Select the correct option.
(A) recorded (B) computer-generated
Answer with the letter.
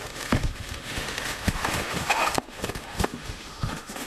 B